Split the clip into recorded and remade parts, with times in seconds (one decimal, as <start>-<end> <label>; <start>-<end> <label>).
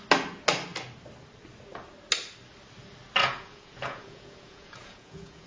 0.0-3.2 recorded; 3.2-5.5 remade